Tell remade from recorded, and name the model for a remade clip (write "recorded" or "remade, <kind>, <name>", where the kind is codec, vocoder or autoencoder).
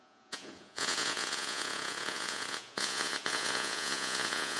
remade, vocoder, Vocos